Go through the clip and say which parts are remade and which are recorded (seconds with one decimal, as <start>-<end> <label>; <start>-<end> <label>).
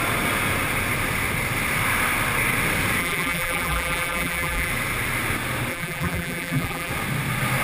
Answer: 0.0-3.0 recorded; 3.0-4.7 remade; 4.7-5.7 recorded; 5.7-6.9 remade; 6.9-7.6 recorded